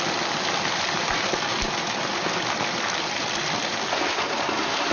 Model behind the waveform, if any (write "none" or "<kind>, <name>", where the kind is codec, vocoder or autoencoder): none